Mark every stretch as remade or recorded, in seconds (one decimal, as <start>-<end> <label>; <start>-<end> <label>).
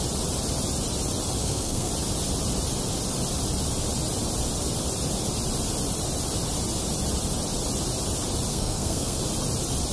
0.0-1.4 recorded; 1.4-1.9 remade; 1.9-8.5 recorded; 8.5-9.2 remade; 9.2-9.9 recorded